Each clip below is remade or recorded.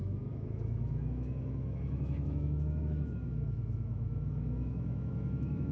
remade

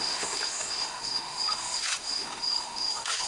remade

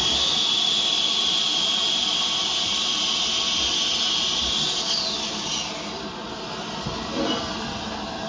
recorded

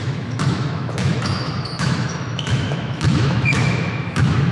remade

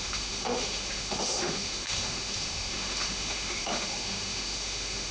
remade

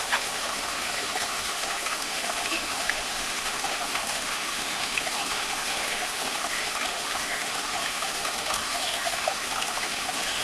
remade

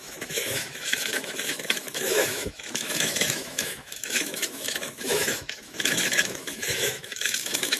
remade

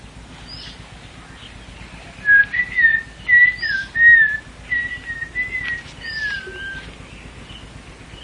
recorded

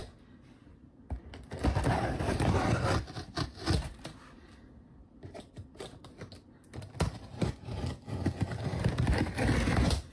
recorded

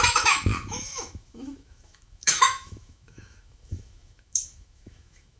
remade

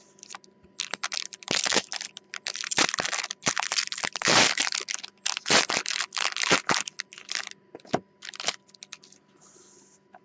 recorded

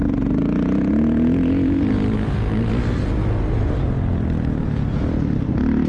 recorded